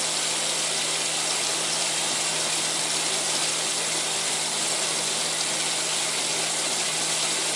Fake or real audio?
real